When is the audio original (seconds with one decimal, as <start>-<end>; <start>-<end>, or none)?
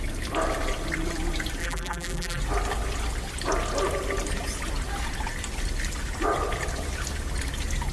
0.0-1.6; 2.4-7.9